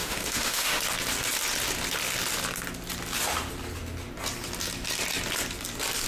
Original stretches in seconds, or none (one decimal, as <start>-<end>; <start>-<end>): 0.8-6.1